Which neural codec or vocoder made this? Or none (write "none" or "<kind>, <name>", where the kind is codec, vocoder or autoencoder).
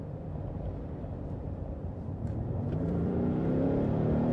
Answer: vocoder, BigVGAN v2